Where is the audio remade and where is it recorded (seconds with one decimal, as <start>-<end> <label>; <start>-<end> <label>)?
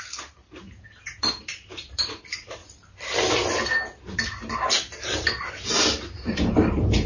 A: 0.0-2.6 remade; 2.6-5.5 recorded; 5.5-7.1 remade